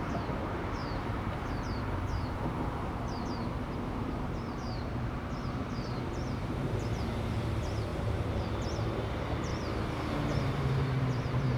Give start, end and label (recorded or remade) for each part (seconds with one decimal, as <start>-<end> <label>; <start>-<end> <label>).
0.0-9.5 remade; 9.5-10.4 recorded; 10.4-11.6 remade